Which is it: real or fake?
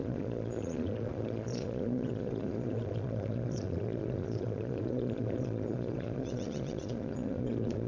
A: fake